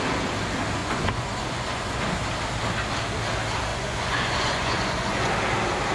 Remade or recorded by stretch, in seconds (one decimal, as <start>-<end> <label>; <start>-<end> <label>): 0.0-0.8 recorded; 0.8-2.0 remade; 2.0-3.7 recorded; 3.7-5.3 remade; 5.3-5.9 recorded

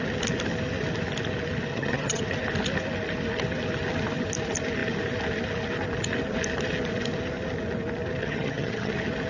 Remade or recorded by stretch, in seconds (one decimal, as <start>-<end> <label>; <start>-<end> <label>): 0.0-1.7 recorded; 1.7-2.2 remade; 2.2-8.2 recorded; 8.2-8.9 remade; 8.9-9.3 recorded